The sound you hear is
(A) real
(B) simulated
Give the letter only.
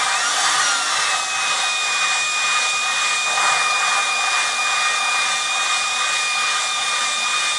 A